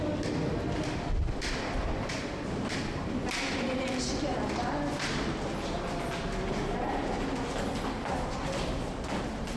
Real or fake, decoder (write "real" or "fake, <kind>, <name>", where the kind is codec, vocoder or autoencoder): real